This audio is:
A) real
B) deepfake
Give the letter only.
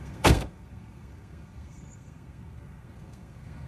B